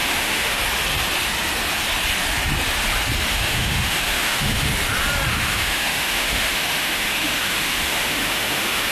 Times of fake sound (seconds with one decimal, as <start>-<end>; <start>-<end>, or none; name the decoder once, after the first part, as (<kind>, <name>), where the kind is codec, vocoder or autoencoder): 0.0-0.6 (autoencoder, DAC-VAE); 3.3-4.7; 5.3-8.9